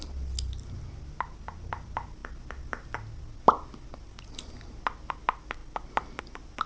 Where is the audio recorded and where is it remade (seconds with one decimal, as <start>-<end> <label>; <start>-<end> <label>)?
0.0-5.6 recorded; 5.6-6.2 remade; 6.2-6.7 recorded